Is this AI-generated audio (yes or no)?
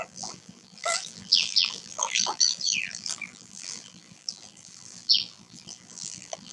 yes